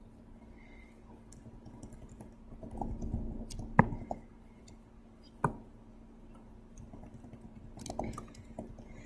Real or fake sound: real